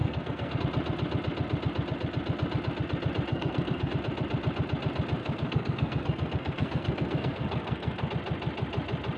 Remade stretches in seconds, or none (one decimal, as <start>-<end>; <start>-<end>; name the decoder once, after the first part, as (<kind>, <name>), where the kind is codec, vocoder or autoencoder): 0.0-0.6 (codec, SNAC); 3.3-3.9; 5.2-8.1